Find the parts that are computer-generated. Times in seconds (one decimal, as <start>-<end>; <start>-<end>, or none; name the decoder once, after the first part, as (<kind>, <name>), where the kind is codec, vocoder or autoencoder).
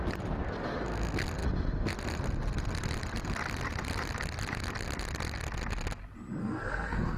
6.4-7.2 (codec, SNAC)